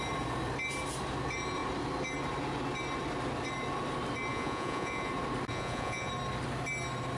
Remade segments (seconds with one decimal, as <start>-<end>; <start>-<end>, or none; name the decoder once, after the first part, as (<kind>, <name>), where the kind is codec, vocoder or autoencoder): 4.3-5.1 (vocoder, Vocos); 5.5-6.1